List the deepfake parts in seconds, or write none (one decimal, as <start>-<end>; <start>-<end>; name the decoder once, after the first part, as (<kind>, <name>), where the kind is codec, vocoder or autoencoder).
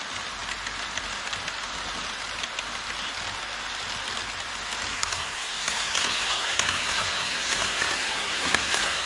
4.9-9.1 (codec, SNAC)